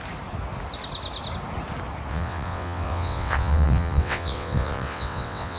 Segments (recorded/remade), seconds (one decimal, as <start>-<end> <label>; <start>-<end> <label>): 0.0-2.1 recorded; 2.1-5.6 remade

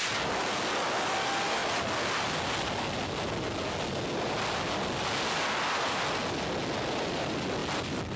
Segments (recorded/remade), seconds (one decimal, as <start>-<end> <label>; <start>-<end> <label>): 0.0-8.2 recorded